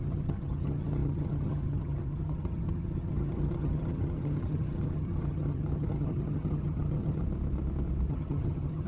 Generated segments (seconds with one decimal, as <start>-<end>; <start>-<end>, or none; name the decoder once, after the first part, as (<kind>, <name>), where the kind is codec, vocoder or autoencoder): 0.0-7.2 (vocoder, HiFi-GAN); 8.1-8.9